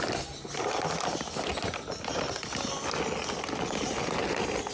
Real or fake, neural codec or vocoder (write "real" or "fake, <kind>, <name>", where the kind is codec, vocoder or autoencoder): real